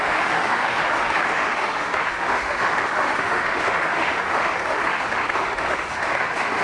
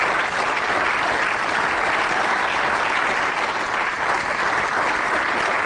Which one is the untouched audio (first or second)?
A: second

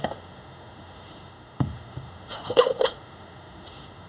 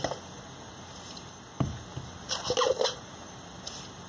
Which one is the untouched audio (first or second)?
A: second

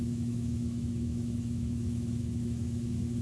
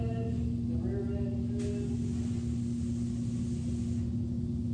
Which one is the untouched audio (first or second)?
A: second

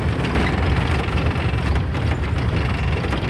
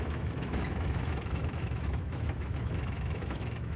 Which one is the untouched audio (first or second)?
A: first